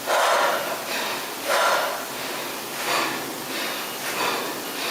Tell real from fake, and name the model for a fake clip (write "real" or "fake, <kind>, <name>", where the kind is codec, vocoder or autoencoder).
real